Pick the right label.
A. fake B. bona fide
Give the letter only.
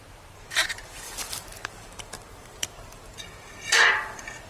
A